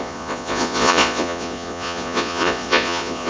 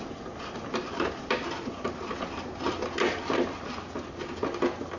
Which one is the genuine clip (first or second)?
second